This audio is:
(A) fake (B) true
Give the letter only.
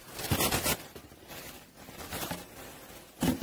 B